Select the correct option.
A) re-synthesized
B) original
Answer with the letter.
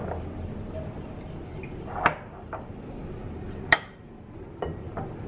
B